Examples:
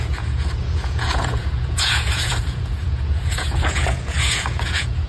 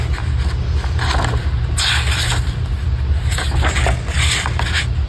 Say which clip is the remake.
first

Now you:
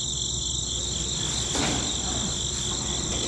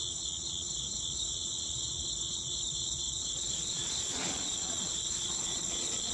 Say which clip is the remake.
second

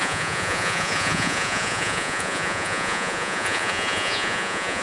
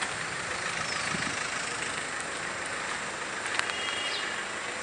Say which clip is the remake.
first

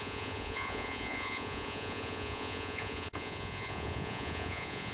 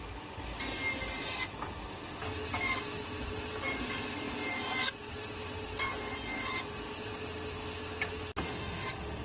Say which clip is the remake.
first